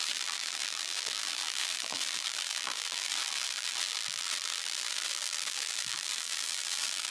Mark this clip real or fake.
fake